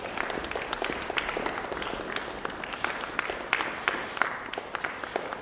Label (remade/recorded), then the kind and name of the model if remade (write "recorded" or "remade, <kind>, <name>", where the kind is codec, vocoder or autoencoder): recorded